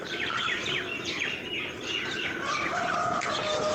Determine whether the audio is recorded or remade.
recorded